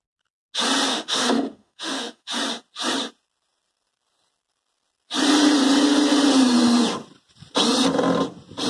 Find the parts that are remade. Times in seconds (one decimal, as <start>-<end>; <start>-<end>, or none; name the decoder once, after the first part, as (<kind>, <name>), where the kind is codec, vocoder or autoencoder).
0.9-2.3 (autoencoder, DAC-VAE)